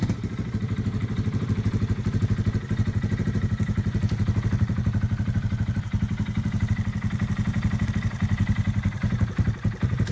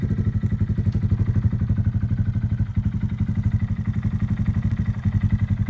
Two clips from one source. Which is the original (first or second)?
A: second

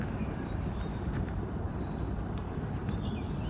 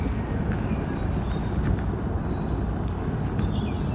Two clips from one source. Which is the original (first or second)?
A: second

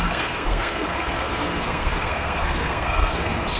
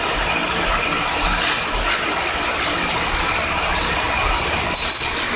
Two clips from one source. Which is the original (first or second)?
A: second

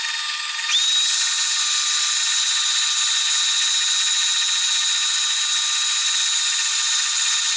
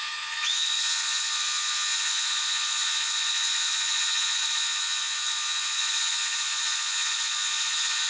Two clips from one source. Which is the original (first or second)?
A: first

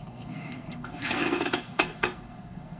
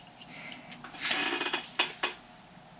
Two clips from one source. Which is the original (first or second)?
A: second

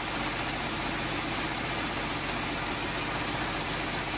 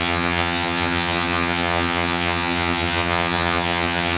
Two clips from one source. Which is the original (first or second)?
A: first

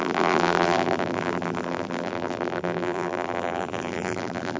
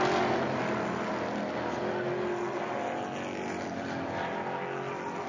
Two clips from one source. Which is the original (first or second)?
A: second